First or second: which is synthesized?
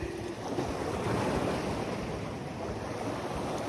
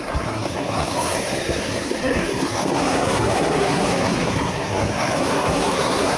second